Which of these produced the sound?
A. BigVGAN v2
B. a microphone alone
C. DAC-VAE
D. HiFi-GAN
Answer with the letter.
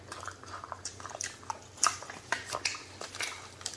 A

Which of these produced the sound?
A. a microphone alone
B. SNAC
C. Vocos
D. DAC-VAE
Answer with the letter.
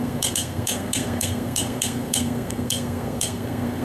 B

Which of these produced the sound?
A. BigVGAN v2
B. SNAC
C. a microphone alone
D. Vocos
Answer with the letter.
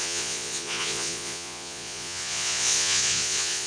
D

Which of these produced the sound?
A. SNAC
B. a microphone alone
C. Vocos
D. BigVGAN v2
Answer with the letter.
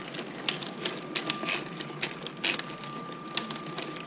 B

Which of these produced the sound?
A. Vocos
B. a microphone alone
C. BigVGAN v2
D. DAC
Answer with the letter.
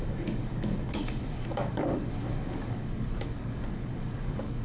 D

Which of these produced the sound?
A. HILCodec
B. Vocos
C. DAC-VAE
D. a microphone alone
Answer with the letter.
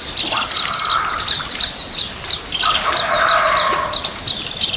D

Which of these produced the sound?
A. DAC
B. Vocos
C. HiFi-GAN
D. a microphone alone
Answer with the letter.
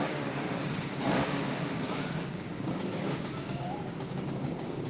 A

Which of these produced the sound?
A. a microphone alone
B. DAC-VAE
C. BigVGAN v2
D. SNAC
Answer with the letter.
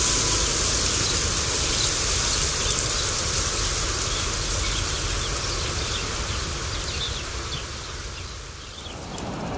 A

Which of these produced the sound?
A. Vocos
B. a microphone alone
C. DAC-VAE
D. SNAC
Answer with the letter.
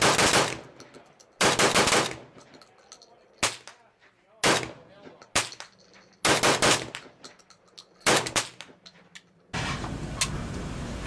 B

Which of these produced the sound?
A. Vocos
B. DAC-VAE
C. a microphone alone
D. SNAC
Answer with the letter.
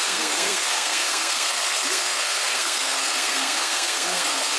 D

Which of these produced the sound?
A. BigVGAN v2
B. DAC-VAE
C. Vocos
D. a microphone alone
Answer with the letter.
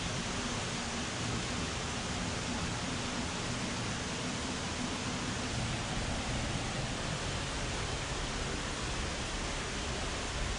D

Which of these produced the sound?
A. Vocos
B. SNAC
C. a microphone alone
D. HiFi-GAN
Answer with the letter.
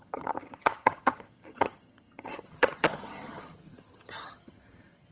D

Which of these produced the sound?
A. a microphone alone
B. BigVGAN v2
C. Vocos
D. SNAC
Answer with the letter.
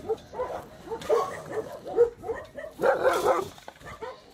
A